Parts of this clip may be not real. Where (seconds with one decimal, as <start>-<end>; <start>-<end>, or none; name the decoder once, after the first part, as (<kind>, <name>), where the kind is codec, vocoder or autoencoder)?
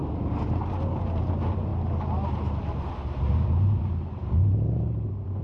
0.0-1.7 (vocoder, BigVGAN v2); 2.9-5.4